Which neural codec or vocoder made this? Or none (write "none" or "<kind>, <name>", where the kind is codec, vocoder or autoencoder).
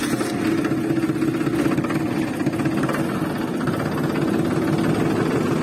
none